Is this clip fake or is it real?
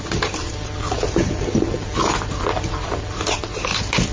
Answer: real